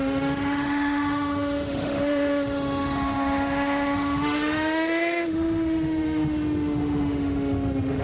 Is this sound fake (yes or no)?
yes